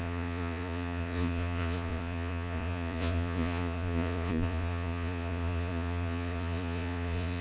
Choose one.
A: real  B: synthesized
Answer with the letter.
B